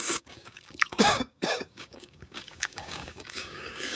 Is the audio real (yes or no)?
no